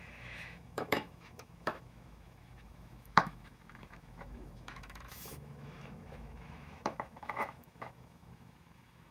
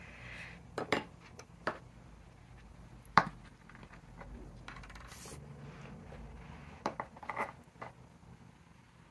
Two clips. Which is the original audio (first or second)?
second